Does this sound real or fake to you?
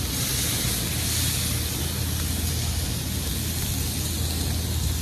real